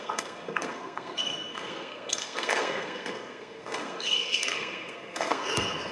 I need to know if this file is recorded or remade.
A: remade